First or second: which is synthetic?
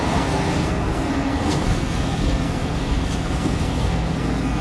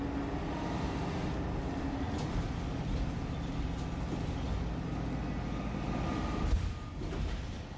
first